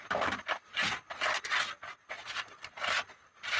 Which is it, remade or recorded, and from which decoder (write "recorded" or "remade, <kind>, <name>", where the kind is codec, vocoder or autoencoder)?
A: recorded